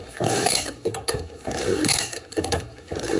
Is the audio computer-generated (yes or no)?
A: yes